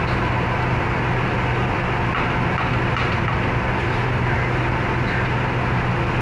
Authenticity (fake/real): real